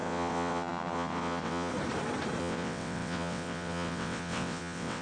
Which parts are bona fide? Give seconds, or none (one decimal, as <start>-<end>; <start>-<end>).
1.7-2.4